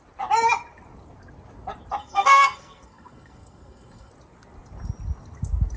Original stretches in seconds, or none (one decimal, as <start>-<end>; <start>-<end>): 0.0-2.0; 4.1-5.8